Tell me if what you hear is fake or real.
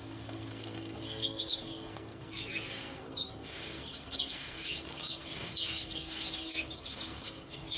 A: fake